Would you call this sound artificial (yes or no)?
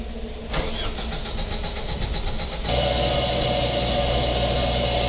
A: no